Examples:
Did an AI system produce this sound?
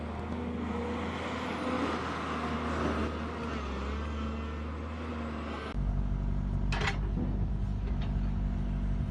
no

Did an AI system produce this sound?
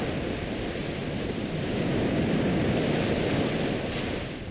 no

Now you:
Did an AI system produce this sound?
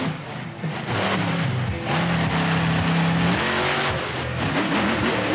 no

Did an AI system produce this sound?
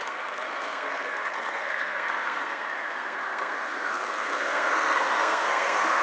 yes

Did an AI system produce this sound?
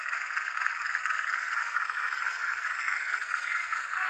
yes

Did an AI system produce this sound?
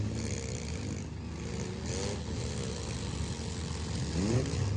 no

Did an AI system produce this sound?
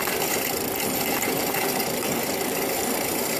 no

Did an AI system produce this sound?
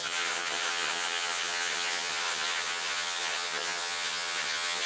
yes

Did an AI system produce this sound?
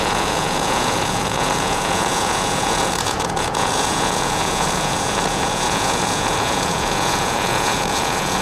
yes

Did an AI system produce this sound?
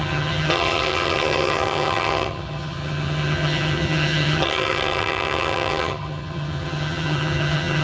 yes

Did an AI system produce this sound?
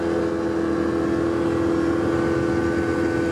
no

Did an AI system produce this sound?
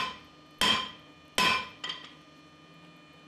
no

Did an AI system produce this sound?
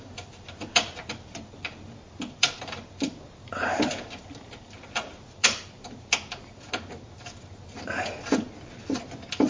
yes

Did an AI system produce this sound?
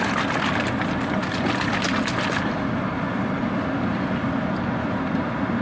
no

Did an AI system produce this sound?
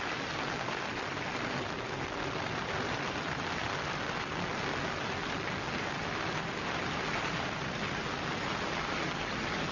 no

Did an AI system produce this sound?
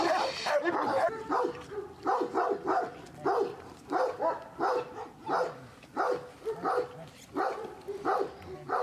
no